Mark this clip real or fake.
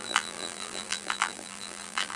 fake